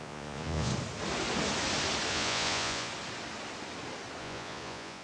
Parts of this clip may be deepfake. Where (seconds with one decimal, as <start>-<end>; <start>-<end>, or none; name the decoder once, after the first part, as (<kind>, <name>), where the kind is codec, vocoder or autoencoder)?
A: 0.0-0.7 (vocoder, Vocos); 2.1-2.9; 4.2-5.0